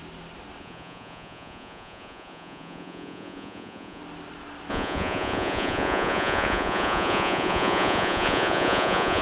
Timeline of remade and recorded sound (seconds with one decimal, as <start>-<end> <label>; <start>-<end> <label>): 0.0-0.6 recorded; 0.6-4.0 remade; 4.0-4.7 recorded; 4.7-9.2 remade